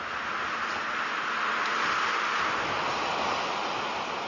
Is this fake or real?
real